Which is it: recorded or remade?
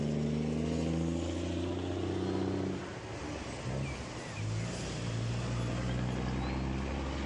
recorded